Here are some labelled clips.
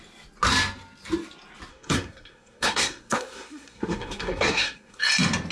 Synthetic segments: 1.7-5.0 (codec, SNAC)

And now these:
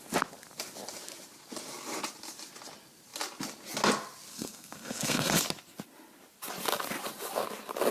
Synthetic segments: 4.3-5.4 (codec, SNAC)

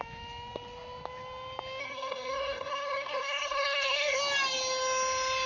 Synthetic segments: 1.8-4.2 (codec, SNAC)

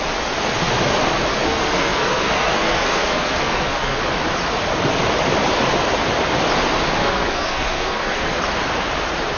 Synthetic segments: 1.3-4.0 (codec, SNAC); 7.0-8.4

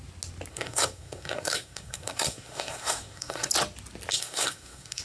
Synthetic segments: 0.5-3.5 (codec, SNAC); 4.1-5.0

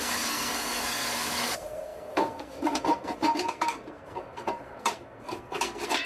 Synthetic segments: 0.0-6.1 (codec, SNAC)

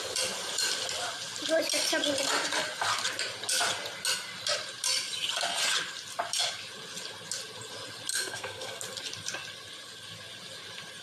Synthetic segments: 8.1-8.8 (codec, SNAC)

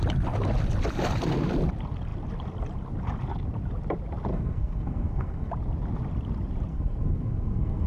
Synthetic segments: 4.3-5.5 (codec, SNAC); 6.7-7.9